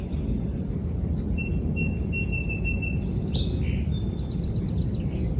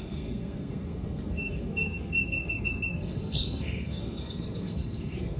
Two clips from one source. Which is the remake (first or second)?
second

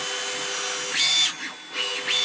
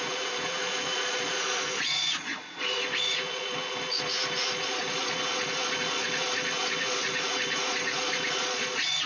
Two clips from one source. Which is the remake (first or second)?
second